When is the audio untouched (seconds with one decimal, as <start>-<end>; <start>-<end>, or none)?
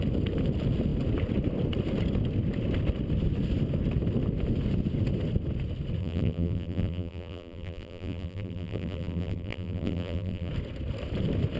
0.0-6.0; 10.5-11.6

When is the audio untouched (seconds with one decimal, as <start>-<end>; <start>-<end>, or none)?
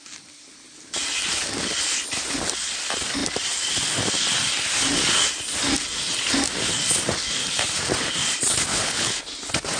0.0-8.7; 9.2-9.8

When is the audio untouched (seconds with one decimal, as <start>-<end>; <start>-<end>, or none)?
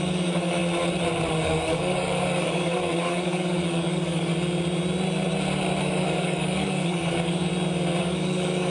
0.6-1.3; 4.3-5.8; 7.5-8.0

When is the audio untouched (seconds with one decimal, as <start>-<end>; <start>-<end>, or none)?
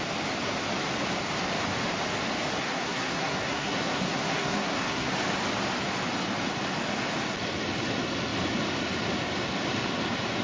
0.0-2.6; 5.1-10.4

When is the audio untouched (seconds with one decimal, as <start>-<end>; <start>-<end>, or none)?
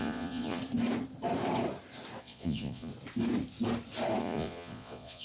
0.6-2.2; 2.9-4.2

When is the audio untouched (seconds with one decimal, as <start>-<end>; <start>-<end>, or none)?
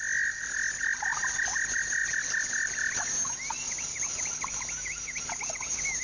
0.0-6.0